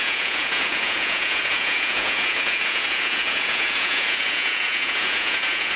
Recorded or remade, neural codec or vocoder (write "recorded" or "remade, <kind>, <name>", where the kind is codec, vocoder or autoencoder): remade, vocoder, Vocos